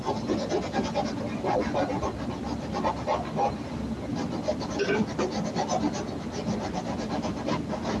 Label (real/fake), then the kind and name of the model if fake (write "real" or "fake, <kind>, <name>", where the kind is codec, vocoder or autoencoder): real